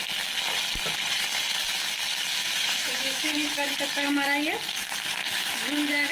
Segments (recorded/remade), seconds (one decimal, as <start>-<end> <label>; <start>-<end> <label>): 0.0-2.4 recorded; 2.4-3.7 remade; 3.7-5.2 recorded; 5.2-6.1 remade